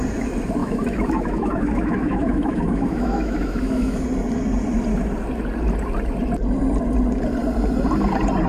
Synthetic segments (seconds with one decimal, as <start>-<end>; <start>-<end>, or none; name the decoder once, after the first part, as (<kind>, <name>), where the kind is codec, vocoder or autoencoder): 0.6-4.0 (autoencoder, DAC-VAE)